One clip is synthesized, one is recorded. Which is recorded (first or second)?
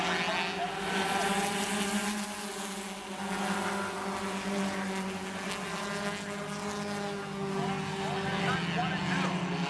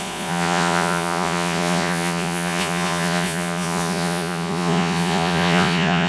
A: first